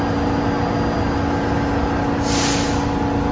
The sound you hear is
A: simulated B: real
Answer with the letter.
B